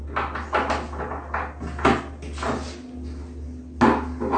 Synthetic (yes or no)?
no